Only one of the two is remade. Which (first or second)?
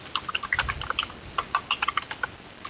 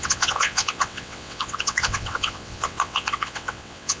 second